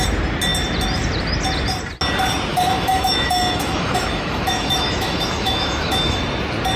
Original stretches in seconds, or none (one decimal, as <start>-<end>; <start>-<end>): 0.0-2.5; 6.2-6.8